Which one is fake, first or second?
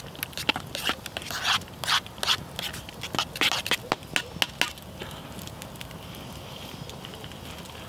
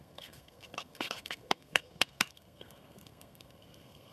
second